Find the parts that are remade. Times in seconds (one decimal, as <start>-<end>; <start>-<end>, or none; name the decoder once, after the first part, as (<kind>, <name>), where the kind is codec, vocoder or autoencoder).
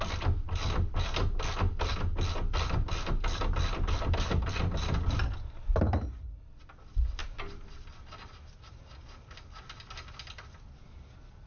none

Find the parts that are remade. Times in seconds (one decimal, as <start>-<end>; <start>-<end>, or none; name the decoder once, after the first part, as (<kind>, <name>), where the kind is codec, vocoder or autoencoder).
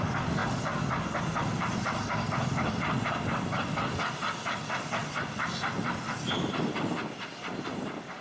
none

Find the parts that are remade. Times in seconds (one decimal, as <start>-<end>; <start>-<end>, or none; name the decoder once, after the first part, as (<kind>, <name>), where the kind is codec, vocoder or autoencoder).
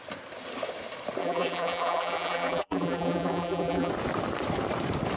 1.2-3.9 (vocoder, BigVGAN v2)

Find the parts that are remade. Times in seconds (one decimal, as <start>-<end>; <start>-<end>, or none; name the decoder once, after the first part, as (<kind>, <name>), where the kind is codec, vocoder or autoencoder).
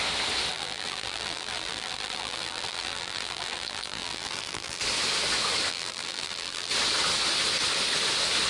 0.5-4.8 (vocoder, BigVGAN v2); 5.7-6.7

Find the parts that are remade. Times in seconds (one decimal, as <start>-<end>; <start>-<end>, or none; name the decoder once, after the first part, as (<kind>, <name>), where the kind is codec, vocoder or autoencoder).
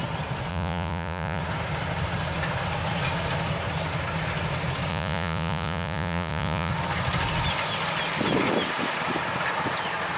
0.5-1.4 (vocoder, Vocos); 4.9-6.7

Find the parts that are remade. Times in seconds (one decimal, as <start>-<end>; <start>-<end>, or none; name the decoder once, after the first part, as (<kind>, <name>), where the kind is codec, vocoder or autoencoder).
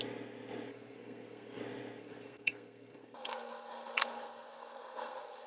0.7-1.6 (codec, SNAC); 2.0-5.5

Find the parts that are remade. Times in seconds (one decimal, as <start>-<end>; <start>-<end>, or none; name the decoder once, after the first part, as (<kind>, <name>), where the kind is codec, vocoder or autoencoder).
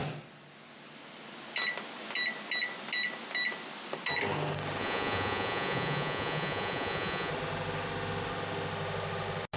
4.8-7.3 (vocoder, Vocos)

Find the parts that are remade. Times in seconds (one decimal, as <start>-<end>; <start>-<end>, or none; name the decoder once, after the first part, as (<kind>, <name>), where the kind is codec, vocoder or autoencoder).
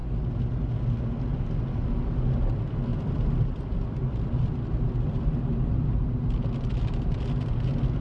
2.9-7.2 (vocoder, BigVGAN v2)